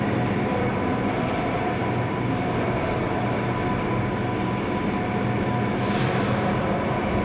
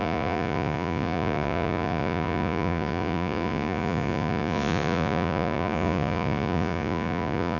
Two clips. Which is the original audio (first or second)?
first